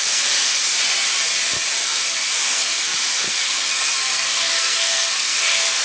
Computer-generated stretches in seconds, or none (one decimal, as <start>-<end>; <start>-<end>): 0.0-0.6; 1.8-5.8

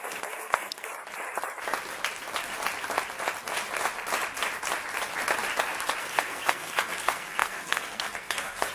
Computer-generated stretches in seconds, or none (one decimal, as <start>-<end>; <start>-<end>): 0.0-0.9; 6.0-8.7

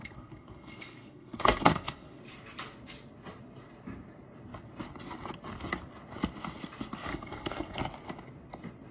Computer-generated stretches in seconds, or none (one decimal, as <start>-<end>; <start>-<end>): 0.0-2.2; 7.1-7.8

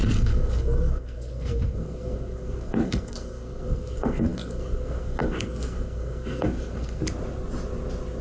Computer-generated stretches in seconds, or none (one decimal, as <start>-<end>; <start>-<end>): 0.0-7.0

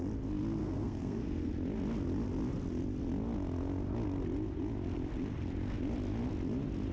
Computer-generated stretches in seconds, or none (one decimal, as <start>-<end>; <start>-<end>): 0.6-1.5